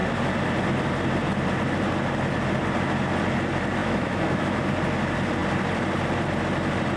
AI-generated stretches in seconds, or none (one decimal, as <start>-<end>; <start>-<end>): 3.8-4.6